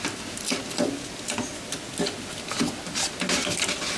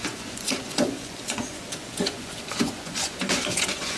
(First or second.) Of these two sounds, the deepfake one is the second